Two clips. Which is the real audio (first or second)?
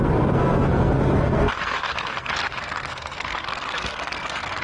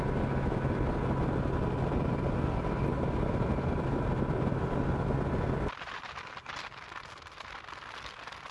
second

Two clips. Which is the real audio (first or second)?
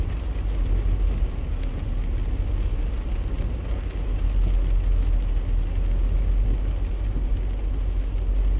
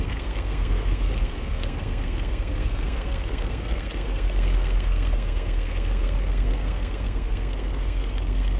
first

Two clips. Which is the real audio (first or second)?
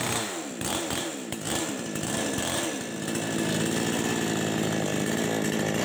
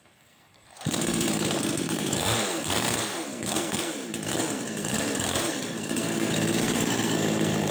first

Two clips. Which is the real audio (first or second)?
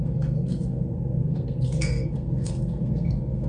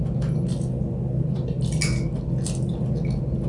second